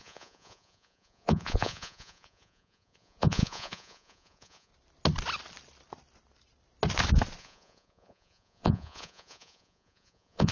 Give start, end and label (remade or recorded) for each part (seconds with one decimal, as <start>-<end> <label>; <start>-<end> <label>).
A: 0.0-4.7 remade; 4.7-7.4 recorded; 7.4-10.5 remade